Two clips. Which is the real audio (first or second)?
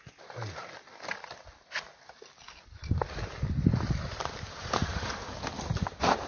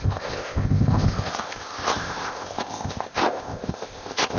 first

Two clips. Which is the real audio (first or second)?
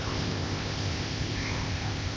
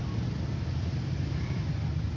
second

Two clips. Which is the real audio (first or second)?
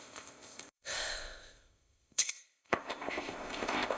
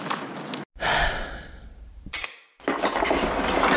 second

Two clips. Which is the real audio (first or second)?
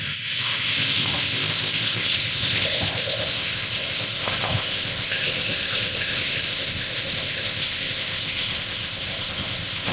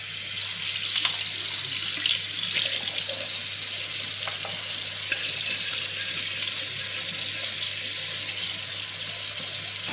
second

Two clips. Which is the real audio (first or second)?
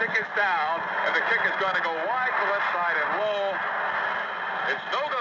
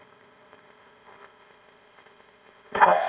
first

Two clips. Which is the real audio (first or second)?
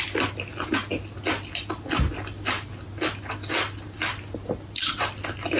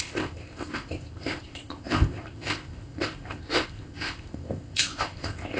first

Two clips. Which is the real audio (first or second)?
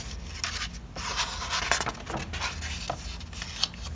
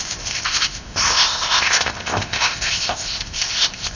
first